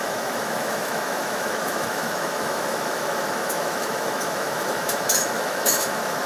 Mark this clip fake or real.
fake